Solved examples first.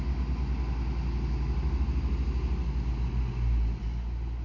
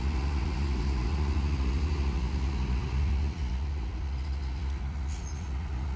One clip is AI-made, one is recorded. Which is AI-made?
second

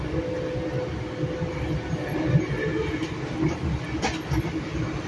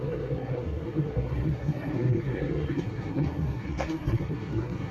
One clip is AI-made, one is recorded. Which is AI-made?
second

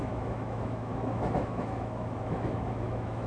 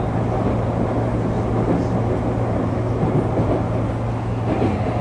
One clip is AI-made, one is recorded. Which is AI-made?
first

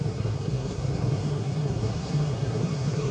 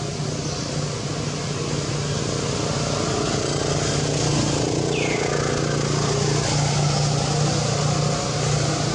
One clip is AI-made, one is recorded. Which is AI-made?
first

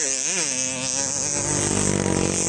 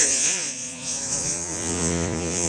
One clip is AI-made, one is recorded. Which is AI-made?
second